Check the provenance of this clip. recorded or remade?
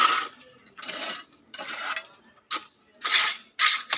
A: recorded